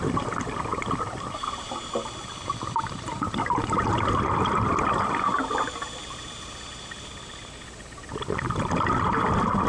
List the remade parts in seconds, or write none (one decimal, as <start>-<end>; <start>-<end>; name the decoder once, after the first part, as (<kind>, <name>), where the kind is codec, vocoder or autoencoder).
none